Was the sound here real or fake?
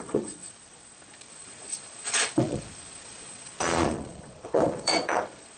fake